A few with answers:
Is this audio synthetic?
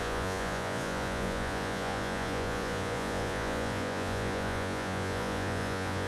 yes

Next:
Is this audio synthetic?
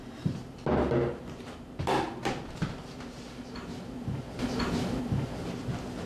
no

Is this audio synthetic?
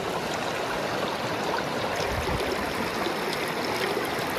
no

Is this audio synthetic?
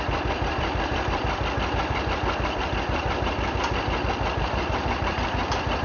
yes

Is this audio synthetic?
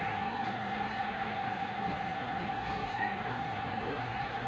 yes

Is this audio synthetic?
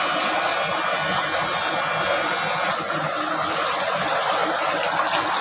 no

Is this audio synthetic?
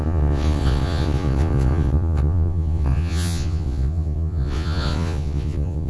yes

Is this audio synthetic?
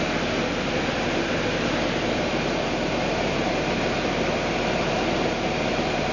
no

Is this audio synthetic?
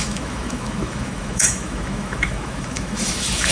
yes